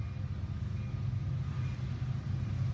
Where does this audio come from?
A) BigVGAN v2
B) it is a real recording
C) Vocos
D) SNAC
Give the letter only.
B